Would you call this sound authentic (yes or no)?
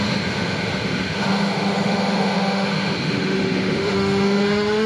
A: no